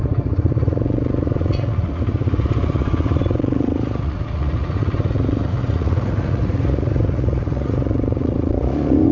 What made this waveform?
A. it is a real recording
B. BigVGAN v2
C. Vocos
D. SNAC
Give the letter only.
C